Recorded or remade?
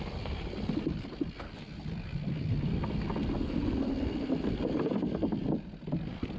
recorded